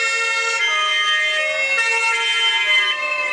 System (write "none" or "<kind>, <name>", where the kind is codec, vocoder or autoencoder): none